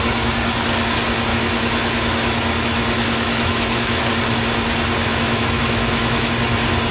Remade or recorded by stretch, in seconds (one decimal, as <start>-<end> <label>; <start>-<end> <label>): 0.0-1.3 recorded; 1.3-4.0 remade; 4.0-5.1 recorded; 5.1-6.3 remade; 6.3-6.9 recorded